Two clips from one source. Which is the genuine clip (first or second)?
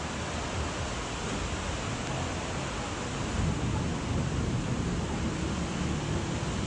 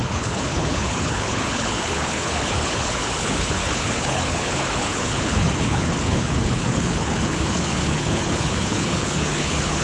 first